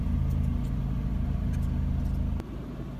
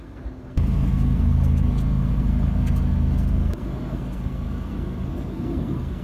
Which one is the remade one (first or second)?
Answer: second